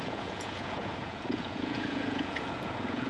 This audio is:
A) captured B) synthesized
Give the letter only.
B